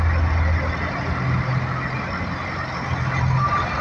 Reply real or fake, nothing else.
real